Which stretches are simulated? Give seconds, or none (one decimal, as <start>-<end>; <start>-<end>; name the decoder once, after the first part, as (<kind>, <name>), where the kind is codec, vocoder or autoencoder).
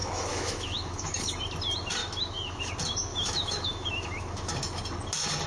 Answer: 0.0-1.4 (autoencoder, DAC-VAE); 2.0-2.6; 3.1-4.8